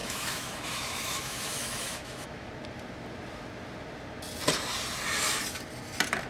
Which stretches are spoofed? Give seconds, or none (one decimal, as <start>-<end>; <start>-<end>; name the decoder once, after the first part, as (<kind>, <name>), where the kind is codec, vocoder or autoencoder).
0.0-2.5 (autoencoder, DAC-VAE)